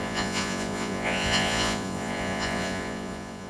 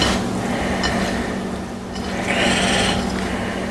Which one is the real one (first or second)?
second